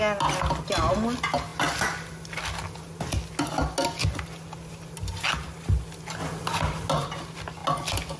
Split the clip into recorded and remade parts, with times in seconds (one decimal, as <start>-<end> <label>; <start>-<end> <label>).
0.0-8.2 recorded